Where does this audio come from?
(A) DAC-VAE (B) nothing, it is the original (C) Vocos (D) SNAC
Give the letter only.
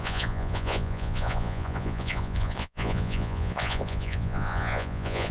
C